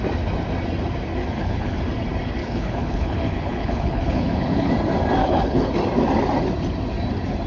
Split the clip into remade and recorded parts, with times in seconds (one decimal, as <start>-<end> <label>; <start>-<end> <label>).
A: 0.0-1.2 recorded; 1.2-1.8 remade; 1.8-2.4 recorded; 2.4-4.7 remade; 4.7-5.2 recorded; 5.2-5.7 remade; 5.7-7.5 recorded